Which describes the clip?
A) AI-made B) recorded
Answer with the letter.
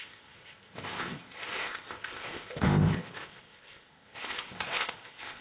A